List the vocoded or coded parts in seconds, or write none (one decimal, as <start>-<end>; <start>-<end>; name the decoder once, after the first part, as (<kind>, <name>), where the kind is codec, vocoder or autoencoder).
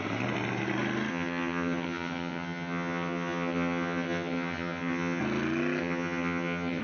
1.1-5.2 (vocoder, HiFi-GAN); 5.8-6.8